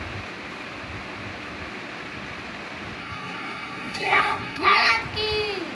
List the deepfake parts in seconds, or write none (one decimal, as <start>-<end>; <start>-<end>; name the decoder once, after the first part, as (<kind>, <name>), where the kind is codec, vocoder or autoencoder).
3.0-4.9 (codec, SNAC)